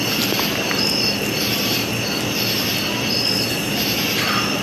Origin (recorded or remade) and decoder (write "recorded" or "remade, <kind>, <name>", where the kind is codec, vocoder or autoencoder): recorded